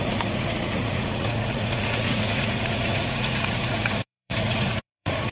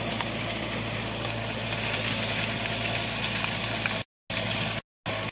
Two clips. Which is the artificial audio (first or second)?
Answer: first